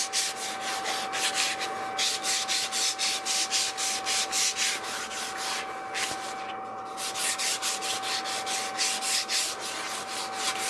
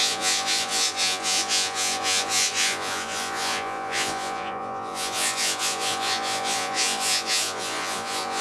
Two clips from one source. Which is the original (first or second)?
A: first